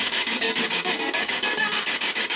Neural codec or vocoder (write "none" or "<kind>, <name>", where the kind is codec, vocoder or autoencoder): codec, DAC